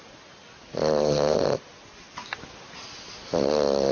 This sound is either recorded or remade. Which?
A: recorded